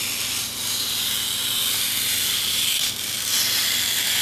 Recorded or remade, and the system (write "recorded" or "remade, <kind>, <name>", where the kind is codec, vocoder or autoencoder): recorded